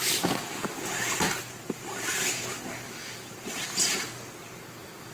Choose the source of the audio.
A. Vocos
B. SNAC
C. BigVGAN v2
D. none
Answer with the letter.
D